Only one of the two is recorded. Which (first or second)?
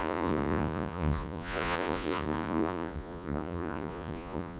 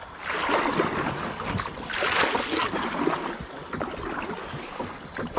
second